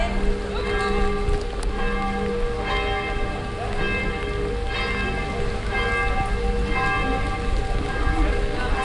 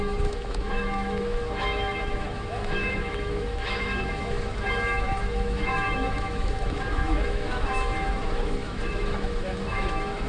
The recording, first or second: first